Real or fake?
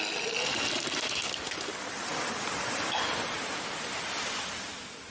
real